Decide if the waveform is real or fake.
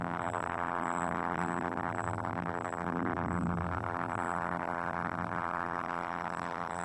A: fake